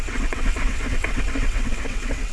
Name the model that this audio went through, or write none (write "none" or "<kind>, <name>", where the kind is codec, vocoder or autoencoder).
vocoder, WaveNeXt